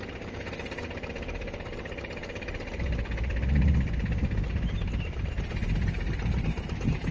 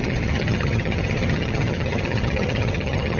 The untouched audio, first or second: first